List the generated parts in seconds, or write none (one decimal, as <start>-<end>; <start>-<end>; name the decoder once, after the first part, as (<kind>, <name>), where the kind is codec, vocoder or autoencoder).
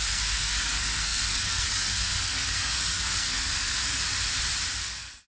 0.0-4.0 (codec, SNAC); 4.8-5.3